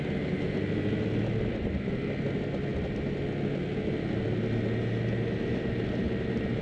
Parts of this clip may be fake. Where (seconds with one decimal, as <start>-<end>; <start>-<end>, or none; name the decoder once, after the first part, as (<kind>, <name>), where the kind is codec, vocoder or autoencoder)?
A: none